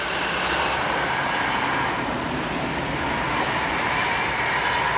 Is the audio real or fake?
real